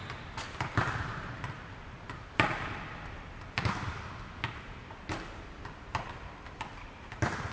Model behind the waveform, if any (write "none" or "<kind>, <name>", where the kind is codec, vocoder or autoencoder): vocoder, BigVGAN v2